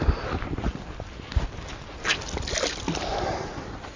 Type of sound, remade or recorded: recorded